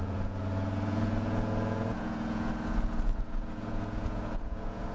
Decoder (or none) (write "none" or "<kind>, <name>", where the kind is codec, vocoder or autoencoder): vocoder, Vocos